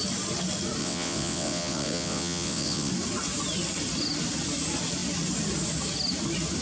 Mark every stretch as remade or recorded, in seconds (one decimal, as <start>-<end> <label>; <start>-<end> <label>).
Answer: 0.0-0.8 recorded; 0.8-2.9 remade; 2.9-6.6 recorded